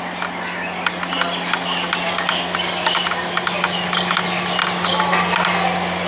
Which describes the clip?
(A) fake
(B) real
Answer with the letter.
B